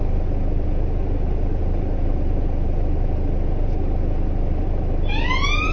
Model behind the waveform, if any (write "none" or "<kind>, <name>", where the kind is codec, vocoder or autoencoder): vocoder, BigVGAN v2